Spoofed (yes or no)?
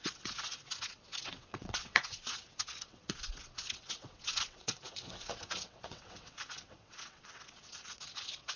yes